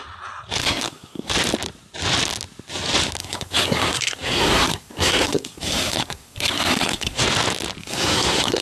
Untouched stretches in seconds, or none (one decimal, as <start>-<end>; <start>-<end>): 0.0-0.6; 1.3-3.2; 7.2-7.8